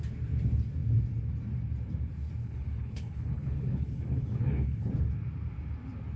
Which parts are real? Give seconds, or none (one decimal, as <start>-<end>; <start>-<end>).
0.0-2.4; 4.9-6.2